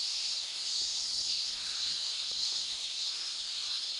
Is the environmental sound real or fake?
fake